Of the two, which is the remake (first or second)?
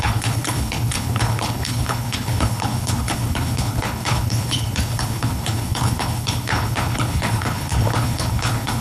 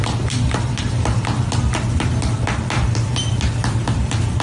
first